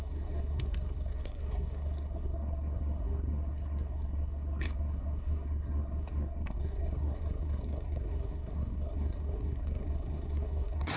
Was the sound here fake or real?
fake